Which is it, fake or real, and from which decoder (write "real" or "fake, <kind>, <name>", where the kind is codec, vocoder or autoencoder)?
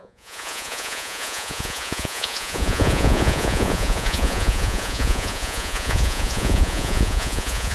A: fake, vocoder, Vocos